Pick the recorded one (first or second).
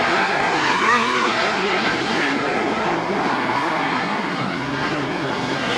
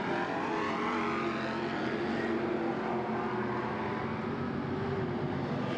second